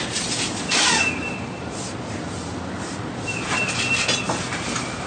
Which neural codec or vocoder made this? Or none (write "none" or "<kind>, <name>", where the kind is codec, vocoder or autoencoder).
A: none